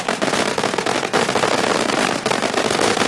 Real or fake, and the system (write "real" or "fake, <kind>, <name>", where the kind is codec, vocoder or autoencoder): real